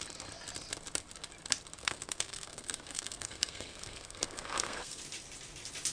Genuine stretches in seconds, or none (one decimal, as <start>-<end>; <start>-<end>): 0.0-1.8; 5.0-5.9